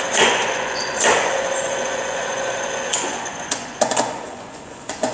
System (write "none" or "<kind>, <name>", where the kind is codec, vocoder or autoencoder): vocoder, Vocos